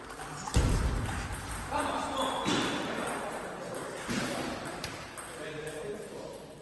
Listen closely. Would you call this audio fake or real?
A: fake